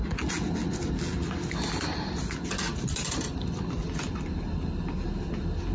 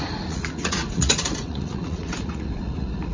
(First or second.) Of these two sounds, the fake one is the second